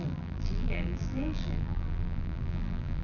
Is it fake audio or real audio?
fake